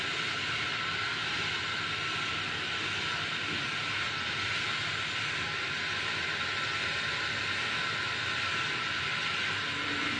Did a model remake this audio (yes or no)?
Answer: no